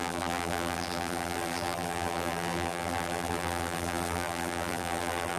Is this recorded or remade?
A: remade